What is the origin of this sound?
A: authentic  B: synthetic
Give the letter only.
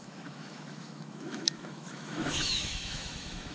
B